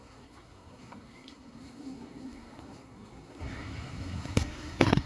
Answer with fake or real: fake